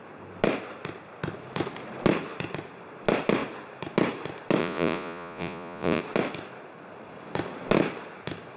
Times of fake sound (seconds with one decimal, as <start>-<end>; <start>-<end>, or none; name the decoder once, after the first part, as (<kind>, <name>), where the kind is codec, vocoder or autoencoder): 4.6-6.0 (vocoder, Vocos)